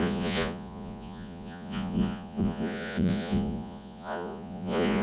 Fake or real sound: fake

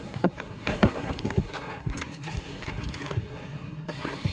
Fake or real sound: fake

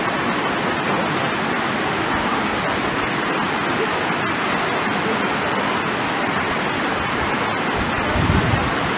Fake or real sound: real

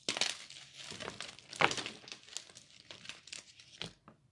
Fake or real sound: real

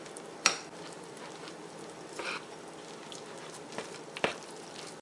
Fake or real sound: fake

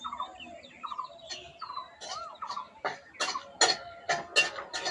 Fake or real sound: real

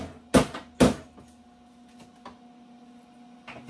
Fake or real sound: real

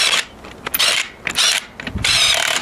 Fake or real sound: real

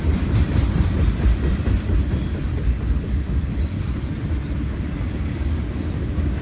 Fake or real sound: fake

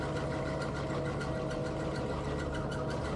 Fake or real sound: real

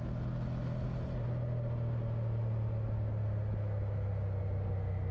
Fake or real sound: real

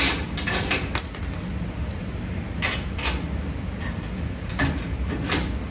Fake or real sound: real